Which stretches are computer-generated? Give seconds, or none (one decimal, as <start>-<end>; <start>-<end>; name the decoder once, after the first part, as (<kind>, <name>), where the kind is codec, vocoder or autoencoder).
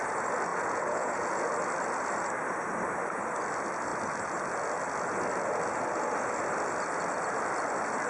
0.5-1.5 (vocoder, Vocos)